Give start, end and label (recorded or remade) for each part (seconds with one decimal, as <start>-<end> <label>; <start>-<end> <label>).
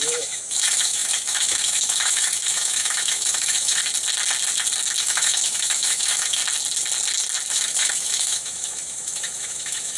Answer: 0.0-3.8 remade; 3.8-5.0 recorded; 5.0-6.4 remade; 6.4-7.5 recorded; 7.5-10.0 remade